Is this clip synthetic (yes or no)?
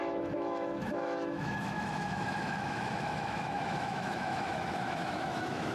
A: yes